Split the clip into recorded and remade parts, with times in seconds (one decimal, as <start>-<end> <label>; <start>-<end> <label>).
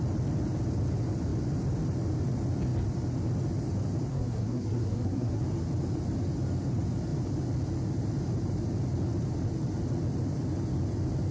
0.0-4.1 recorded; 4.1-5.4 remade; 5.4-11.3 recorded